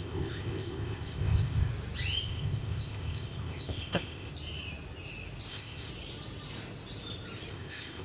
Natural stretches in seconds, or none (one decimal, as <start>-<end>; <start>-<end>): 1.7-2.2; 4.3-5.5; 5.9-7.5